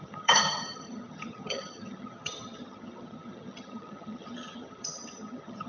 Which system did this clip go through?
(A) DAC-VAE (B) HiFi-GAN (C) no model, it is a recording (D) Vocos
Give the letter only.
B